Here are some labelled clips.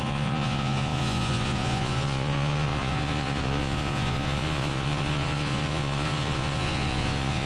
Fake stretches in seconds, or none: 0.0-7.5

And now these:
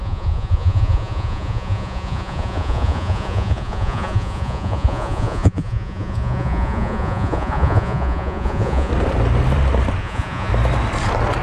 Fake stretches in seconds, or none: 0.0-8.9; 10.0-10.5

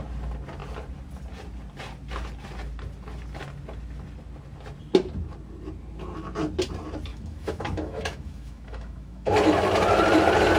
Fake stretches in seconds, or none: 7.1-9.3